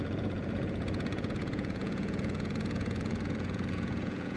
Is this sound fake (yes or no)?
yes